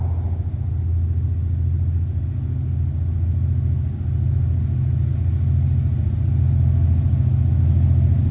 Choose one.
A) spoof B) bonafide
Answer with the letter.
B